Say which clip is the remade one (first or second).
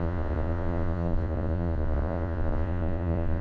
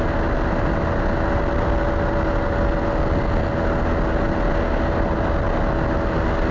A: first